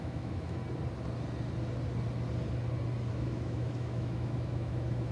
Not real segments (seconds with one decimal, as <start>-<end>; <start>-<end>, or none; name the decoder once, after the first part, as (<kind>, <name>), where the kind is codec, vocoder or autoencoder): 0.0-0.6 (autoencoder, DAC-VAE); 3.1-5.1